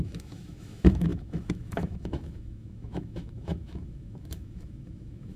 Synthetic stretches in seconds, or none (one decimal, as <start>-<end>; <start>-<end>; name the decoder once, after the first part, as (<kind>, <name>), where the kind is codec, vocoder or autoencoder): 0.0-5.4 (autoencoder, DAC-VAE)